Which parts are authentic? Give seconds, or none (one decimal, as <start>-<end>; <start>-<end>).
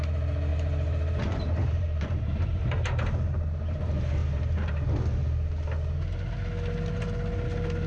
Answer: 0.0-0.5; 2.7-4.2; 4.7-7.9